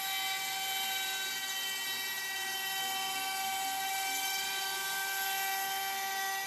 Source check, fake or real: real